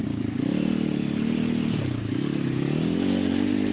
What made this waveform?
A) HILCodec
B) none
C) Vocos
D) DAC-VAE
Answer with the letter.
B